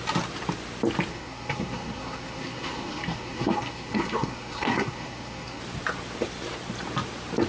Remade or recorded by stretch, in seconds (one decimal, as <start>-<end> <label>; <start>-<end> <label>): 0.0-1.1 recorded; 1.1-5.6 remade; 5.6-7.5 recorded